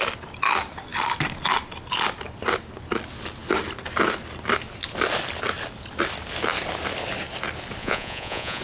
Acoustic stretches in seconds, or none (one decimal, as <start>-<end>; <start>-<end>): 0.0-7.8